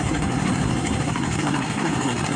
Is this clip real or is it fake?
fake